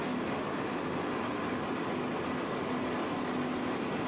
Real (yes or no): yes